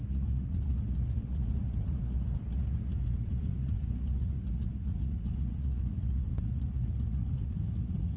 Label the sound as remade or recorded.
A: remade